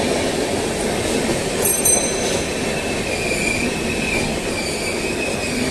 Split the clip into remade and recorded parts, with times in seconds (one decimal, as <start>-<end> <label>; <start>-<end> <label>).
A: 0.0-1.3 recorded; 1.3-2.0 remade; 2.0-5.7 recorded